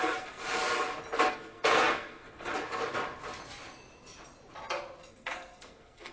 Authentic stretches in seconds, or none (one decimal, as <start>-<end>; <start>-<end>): 0.6-1.3; 2.5-5.1